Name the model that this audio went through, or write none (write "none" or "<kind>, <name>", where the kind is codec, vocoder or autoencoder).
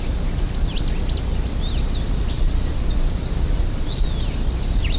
none